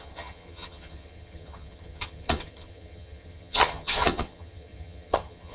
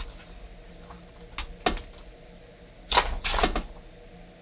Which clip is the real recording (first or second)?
second